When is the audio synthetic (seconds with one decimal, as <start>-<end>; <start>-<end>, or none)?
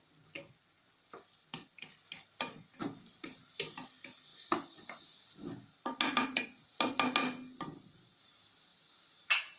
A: none